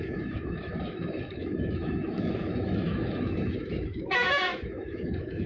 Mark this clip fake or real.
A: fake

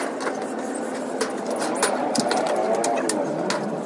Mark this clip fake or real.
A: real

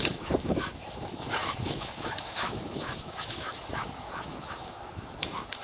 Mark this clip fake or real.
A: fake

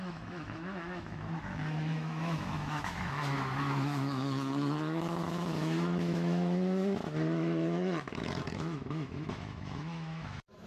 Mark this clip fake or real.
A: fake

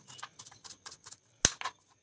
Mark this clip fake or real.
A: real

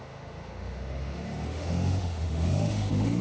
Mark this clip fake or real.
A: fake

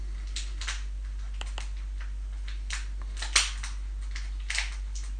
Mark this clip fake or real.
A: real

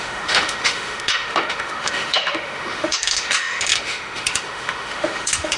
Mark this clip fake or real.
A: fake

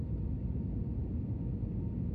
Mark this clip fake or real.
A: real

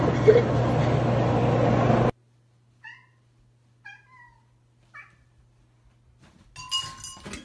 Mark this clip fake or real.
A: real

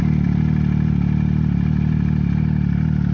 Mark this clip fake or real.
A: real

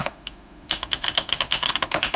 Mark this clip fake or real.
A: fake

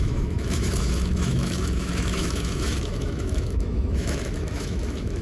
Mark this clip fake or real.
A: fake